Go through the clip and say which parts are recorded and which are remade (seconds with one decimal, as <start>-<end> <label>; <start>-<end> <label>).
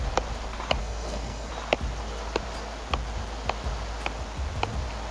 0.0-0.8 recorded; 0.8-1.5 remade; 1.5-5.1 recorded